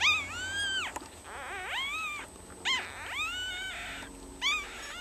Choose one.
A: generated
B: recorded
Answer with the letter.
B